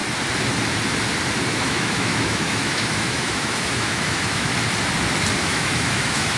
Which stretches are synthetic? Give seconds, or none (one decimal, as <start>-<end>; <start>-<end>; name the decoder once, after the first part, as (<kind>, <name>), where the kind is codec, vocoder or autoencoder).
1.5-4.5 (autoencoder, DAC-VAE); 5.4-6.4